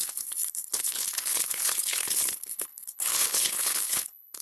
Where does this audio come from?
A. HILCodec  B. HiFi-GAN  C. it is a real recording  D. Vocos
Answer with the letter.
A